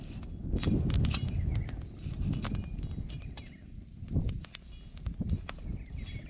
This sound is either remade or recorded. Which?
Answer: recorded